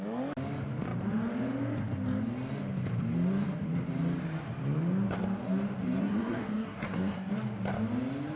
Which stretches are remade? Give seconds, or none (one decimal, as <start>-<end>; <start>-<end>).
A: 6.0-7.3